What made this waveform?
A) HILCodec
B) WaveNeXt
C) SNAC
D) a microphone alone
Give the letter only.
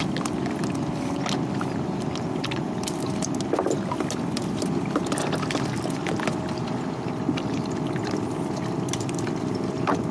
D